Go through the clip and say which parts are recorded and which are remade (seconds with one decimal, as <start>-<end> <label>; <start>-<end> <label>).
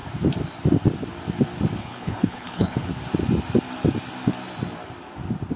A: 0.0-1.8 recorded; 1.8-2.9 remade; 2.9-5.6 recorded